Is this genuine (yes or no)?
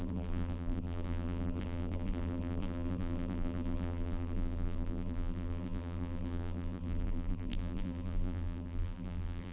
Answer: no